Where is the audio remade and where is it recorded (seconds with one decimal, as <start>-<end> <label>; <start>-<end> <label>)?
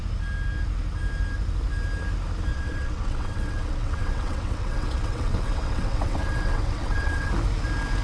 0.0-2.5 recorded; 2.5-7.3 remade; 7.3-8.0 recorded